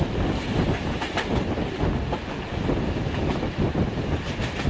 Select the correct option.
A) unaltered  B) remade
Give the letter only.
A